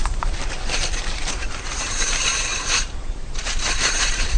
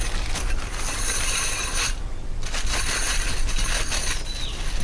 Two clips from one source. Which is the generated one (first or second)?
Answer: first